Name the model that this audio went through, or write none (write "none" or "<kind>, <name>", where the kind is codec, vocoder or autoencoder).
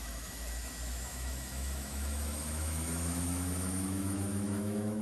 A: autoencoder, DAC-VAE